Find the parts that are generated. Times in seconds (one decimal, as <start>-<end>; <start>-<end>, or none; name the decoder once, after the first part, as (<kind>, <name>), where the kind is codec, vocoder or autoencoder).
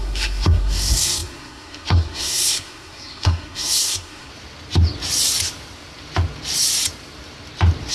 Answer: 0.0-4.3 (codec, SNAC)